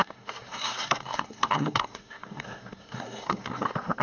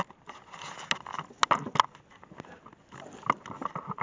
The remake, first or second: first